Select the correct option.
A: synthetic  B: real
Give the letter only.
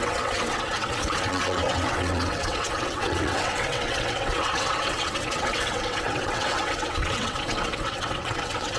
A